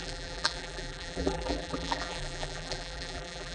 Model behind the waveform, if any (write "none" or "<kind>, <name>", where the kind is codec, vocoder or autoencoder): vocoder, BigVGAN v2